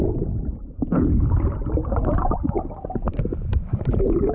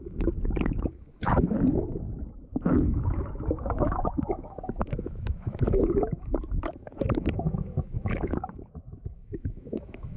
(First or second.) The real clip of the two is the first